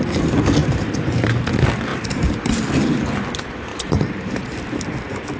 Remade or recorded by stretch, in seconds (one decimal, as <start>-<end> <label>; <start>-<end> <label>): 0.0-0.6 recorded; 0.6-1.4 remade; 1.4-1.9 recorded; 1.9-3.0 remade; 3.0-3.7 recorded; 3.7-4.8 remade; 4.8-5.4 recorded